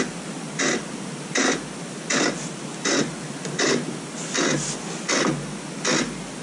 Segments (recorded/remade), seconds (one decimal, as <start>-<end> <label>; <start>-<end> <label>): 0.0-6.4 recorded